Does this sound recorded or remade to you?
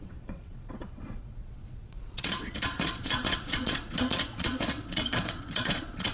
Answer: remade